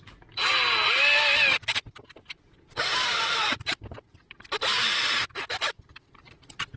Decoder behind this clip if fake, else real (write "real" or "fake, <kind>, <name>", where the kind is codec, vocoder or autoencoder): real